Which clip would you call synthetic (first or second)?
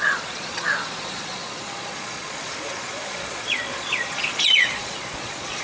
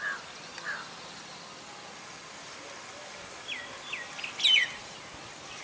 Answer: first